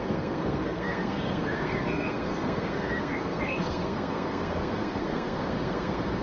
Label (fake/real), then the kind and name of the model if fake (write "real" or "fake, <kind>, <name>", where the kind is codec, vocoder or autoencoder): fake, codec, SNAC